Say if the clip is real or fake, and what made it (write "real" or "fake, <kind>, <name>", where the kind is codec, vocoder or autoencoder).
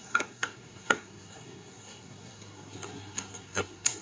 fake, codec, SNAC